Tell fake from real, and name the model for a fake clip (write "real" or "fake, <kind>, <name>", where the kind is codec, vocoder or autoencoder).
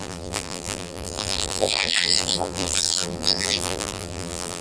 fake, vocoder, BigVGAN v2